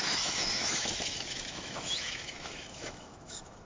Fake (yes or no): yes